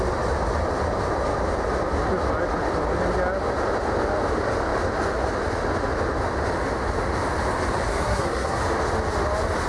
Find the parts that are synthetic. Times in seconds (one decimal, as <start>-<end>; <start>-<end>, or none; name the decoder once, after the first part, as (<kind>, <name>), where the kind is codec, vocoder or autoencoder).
7.9-8.6 (codec, SNAC)